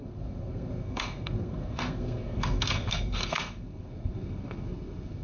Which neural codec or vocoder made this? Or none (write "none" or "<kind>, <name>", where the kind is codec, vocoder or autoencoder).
codec, SNAC